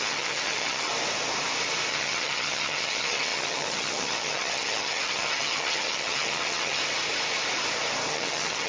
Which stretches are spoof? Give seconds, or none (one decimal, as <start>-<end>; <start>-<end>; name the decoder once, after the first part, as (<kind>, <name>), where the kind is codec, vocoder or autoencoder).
0.0-0.9 (vocoder, HiFi-GAN); 1.9-6.8; 8.1-8.7